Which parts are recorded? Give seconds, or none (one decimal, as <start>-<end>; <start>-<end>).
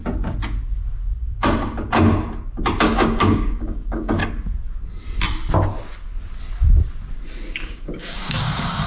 0.0-2.8; 4.2-7.5